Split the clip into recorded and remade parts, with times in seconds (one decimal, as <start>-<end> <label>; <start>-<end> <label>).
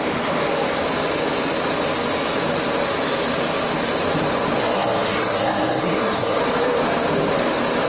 0.0-4.6 recorded; 4.6-6.4 remade; 6.4-7.9 recorded